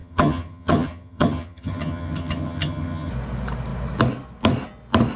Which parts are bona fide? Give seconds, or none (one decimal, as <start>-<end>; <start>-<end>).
3.1-5.2